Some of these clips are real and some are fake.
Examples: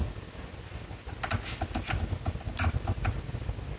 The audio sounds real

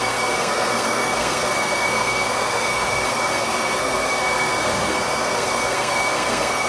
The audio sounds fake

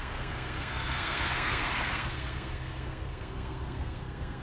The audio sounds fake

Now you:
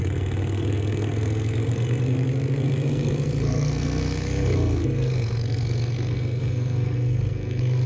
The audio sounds fake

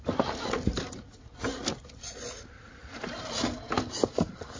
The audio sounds real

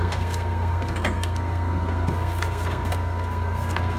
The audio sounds fake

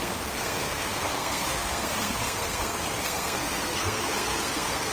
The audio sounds fake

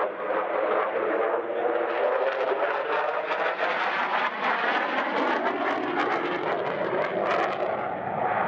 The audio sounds real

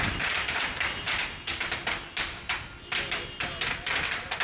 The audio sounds real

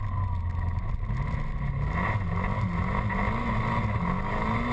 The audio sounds real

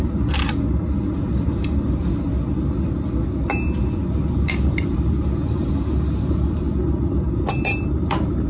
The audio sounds real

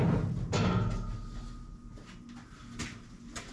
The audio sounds real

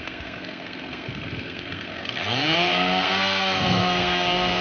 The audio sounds fake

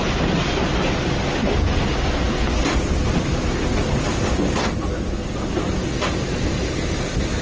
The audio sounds real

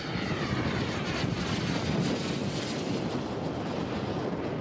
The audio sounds real